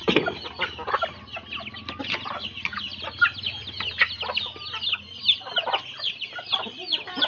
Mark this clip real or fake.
real